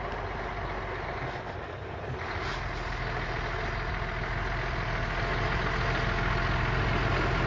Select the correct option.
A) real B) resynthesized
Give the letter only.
A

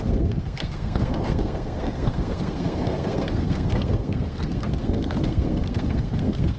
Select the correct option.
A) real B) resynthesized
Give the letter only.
B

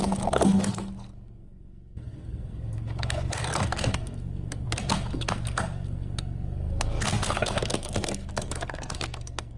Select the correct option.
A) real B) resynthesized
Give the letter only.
B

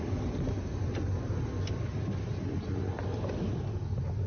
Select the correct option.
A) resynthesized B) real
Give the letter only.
B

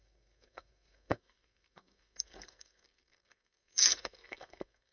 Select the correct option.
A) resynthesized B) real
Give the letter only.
A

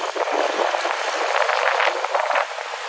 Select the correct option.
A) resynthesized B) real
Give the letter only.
B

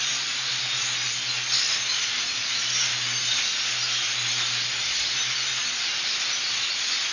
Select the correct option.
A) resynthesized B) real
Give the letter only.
B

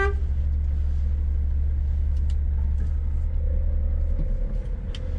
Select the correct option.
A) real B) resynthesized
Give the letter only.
A